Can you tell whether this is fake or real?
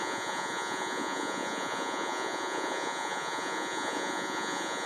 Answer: fake